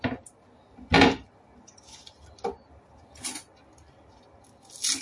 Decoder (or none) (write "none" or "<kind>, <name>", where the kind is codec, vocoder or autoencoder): none